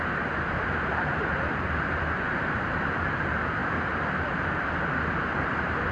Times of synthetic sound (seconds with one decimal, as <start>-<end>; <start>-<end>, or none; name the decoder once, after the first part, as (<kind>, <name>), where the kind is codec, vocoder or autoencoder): 3.6-4.1 (vocoder, BigVGAN v2)